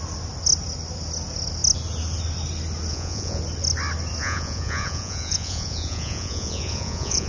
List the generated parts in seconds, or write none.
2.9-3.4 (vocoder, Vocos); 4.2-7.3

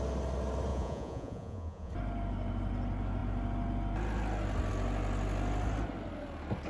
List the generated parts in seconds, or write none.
0.7-1.9 (vocoder, Vocos)

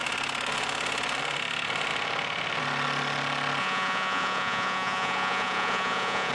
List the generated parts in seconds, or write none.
3.6-6.3 (vocoder, Vocos)

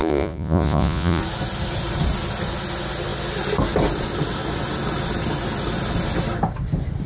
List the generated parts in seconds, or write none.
0.0-1.2 (vocoder, Vocos)

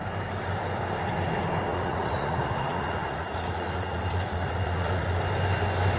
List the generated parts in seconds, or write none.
1.7-5.2 (vocoder, Vocos)

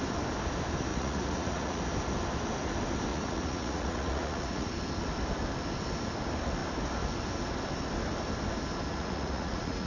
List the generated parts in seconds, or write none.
0.9-1.8 (vocoder, Vocos); 3.1-4.7; 8.9-9.9